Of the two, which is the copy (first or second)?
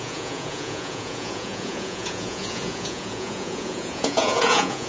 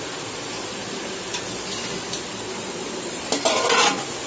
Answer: first